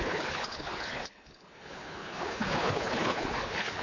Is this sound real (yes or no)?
no